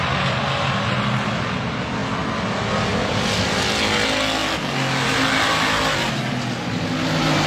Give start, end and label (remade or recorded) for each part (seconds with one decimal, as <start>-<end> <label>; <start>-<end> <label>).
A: 0.0-7.5 recorded